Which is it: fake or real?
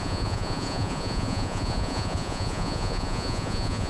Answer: fake